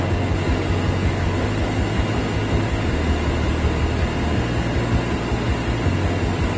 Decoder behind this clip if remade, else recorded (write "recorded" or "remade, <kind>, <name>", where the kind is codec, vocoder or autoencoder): recorded